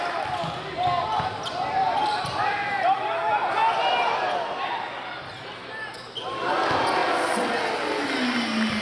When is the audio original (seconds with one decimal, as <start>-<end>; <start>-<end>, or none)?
0.0-2.0; 5.3-8.8

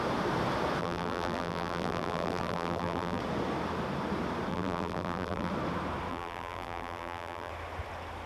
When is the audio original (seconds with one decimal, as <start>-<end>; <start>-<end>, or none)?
0.0-0.8; 3.2-4.5; 5.5-6.1; 7.5-8.3

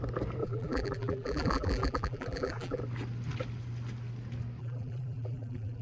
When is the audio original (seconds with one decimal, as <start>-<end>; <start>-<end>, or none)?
0.0-0.4; 2.8-4.6

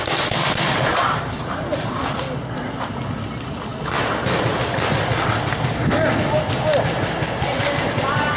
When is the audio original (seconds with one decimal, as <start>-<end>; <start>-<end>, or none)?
0.0-0.9; 2.4-8.4